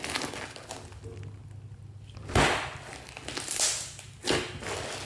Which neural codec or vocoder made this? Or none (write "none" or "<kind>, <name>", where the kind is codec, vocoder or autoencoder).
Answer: none